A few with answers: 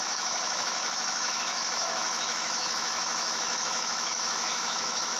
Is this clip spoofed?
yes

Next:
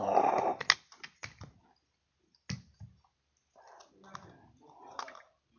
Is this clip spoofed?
no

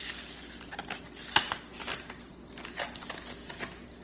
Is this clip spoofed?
no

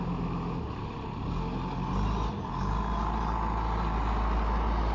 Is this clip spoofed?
no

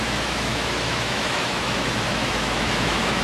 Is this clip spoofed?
yes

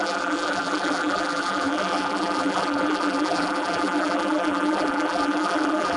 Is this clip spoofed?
yes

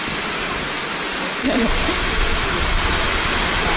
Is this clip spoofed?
no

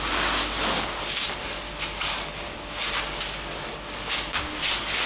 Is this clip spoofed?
no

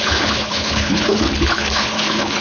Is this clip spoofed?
yes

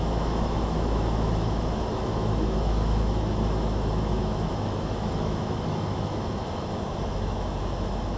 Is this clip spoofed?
yes